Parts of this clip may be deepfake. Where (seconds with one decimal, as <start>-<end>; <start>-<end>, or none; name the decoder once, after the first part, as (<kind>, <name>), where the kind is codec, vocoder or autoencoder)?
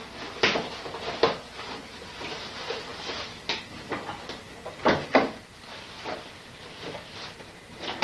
none